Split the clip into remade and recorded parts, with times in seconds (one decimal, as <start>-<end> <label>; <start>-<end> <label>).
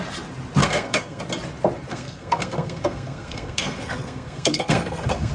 0.0-0.6 recorded; 0.6-1.2 remade; 1.2-1.9 recorded; 1.9-5.3 remade